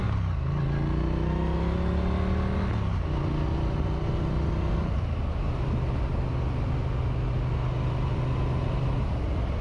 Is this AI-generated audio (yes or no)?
no